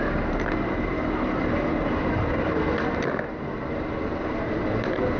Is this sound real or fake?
real